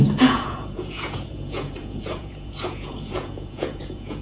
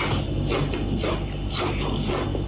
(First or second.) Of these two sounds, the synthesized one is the first